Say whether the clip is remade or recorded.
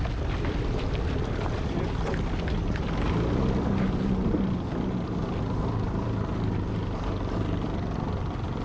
recorded